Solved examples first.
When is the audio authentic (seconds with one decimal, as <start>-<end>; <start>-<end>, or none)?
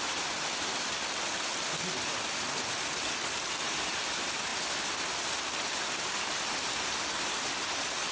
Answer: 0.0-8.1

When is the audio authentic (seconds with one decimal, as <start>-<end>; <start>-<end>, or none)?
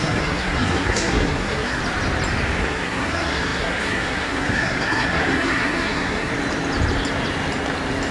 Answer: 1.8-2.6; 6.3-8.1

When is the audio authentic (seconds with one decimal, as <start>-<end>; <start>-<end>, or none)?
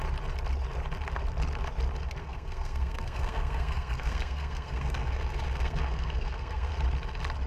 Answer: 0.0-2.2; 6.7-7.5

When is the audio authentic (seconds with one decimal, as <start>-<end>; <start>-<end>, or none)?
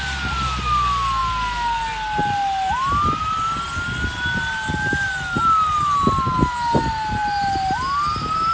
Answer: 0.0-8.5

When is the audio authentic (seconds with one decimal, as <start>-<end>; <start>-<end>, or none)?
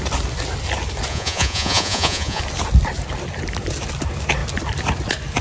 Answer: 0.0-1.1; 2.4-5.4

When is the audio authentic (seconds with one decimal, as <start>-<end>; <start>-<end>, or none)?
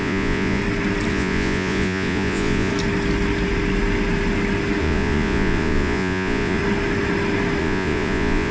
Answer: 0.6-1.1; 2.7-4.8; 6.6-7.6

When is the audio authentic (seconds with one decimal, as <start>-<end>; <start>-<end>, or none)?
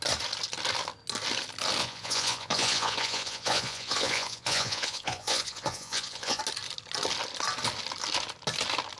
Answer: 0.0-1.8; 6.4-9.0